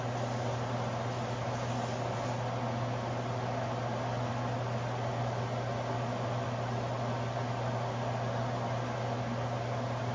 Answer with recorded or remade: recorded